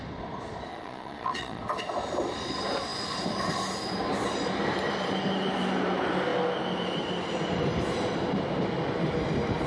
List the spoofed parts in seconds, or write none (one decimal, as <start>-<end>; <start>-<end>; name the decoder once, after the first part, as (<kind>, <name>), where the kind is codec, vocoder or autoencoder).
0.7-1.6 (vocoder, Vocos)